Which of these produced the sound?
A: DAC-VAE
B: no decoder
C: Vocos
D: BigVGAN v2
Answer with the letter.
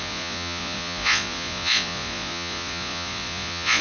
C